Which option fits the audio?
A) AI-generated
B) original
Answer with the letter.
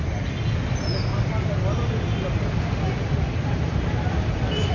B